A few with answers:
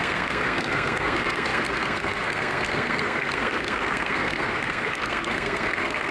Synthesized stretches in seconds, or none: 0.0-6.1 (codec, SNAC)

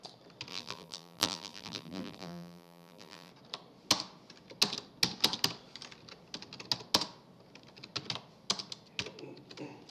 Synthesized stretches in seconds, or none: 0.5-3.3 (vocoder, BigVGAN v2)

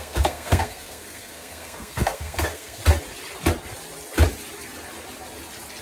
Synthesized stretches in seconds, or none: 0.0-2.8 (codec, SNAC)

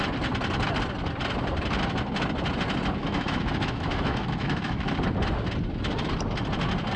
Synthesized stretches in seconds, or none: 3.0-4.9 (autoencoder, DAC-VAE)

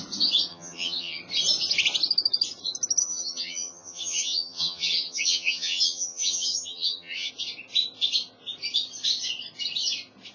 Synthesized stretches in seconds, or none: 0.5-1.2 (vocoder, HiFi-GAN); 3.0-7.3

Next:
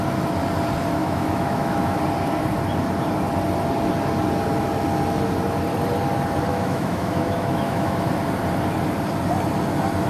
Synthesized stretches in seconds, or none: 1.0-2.0 (autoencoder, DAC-VAE); 6.5-8.1

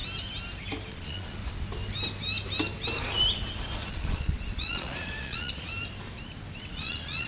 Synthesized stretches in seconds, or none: 0.9-1.4 (vocoder, Vocos); 3.9-5.7; 6.7-7.3